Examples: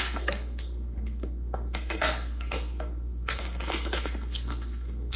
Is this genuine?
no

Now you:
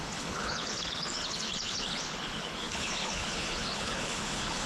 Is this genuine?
no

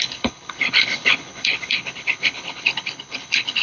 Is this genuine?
no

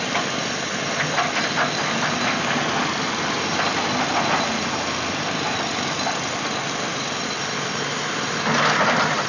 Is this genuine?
yes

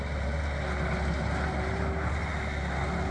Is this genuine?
yes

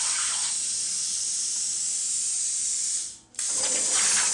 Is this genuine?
yes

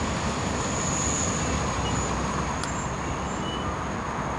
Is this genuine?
yes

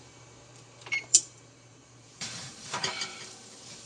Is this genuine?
no